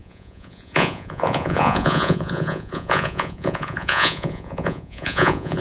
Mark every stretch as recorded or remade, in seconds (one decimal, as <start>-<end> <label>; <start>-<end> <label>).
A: 0.0-5.6 remade